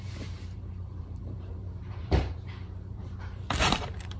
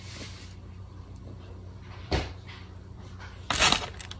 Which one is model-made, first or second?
first